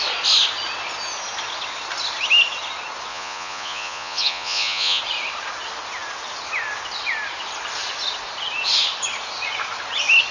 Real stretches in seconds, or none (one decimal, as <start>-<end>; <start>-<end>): 0.0-3.1; 5.0-10.3